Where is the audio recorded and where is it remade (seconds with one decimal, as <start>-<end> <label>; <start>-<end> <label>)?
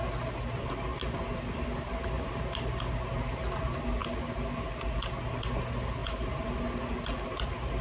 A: 0.0-7.8 recorded